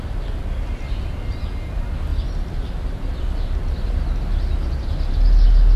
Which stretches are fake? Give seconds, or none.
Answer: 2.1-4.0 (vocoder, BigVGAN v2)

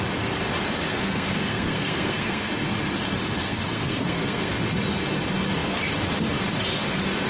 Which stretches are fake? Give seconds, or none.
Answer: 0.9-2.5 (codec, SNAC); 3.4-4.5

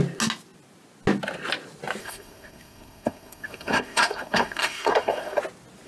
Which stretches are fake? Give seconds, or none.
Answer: 2.0-5.4 (codec, SNAC)

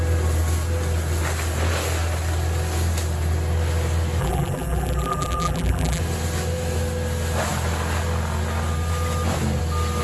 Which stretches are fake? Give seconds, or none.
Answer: 4.2-6.0 (vocoder, BigVGAN v2)

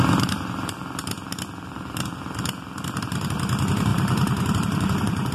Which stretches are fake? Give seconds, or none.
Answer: 3.9-5.3 (vocoder, BigVGAN v2)